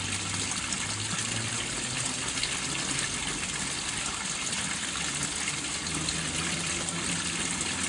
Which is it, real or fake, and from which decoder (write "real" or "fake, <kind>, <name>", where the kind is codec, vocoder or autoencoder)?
real